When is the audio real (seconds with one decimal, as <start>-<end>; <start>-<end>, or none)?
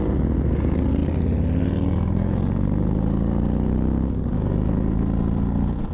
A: 0.0-5.9